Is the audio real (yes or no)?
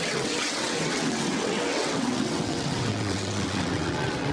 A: no